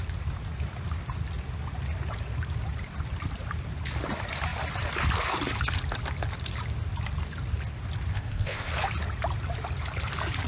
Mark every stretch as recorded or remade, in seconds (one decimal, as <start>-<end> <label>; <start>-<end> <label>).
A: 0.0-8.1 recorded; 8.1-8.7 remade; 8.7-10.5 recorded